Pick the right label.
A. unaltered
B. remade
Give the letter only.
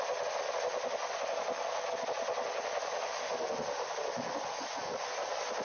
A